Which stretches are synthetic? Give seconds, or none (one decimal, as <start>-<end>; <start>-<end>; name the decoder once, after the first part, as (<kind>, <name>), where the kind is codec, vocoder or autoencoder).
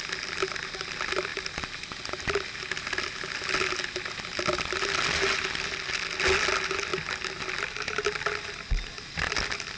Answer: none